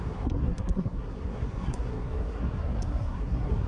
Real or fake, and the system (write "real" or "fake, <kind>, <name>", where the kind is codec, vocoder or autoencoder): fake, codec, SNAC